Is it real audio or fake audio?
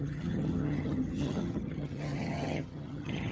fake